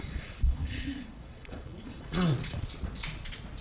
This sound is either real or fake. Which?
fake